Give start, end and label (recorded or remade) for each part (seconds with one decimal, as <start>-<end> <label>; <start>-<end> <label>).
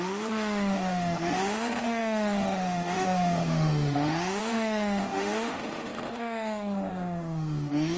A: 0.0-8.0 remade